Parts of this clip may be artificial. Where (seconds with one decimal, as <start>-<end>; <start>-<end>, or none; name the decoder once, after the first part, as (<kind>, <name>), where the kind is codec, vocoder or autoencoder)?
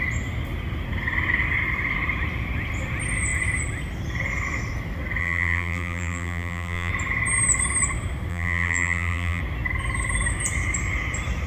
5.2-6.9 (vocoder, BigVGAN v2); 8.3-9.4